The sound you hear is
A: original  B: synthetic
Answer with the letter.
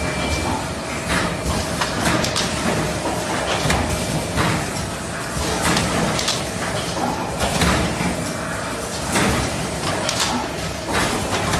A